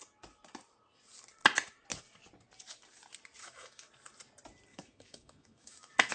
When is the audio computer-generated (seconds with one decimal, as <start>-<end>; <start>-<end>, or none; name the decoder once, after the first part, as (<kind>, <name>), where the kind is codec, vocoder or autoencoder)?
3.4-3.9 (autoencoder, DAC-VAE); 4.7-6.1